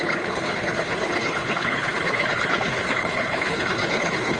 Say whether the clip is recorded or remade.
remade